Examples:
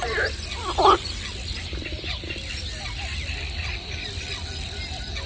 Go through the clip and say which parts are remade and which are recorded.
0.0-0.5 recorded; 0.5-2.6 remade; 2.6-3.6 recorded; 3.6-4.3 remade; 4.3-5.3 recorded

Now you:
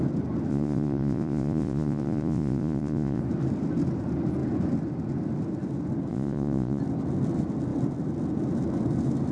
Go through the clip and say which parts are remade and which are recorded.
0.0-0.5 recorded; 0.5-3.2 remade; 3.2-6.1 recorded; 6.1-6.8 remade; 6.8-9.3 recorded

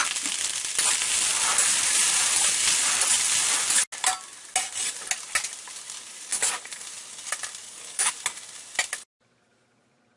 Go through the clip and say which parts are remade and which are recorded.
0.0-6.0 recorded; 6.0-6.8 remade; 6.8-7.6 recorded; 7.6-8.1 remade; 8.1-10.2 recorded

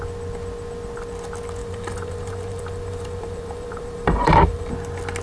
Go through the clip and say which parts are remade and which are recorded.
0.0-1.6 recorded; 1.6-4.7 remade; 4.7-5.2 recorded

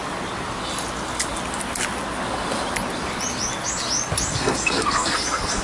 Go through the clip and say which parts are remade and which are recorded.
0.0-4.3 recorded; 4.3-5.6 remade